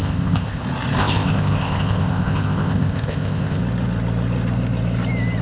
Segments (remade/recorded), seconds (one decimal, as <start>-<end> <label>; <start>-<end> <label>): 0.0-0.6 remade; 0.6-1.0 recorded; 1.0-3.6 remade; 3.6-5.4 recorded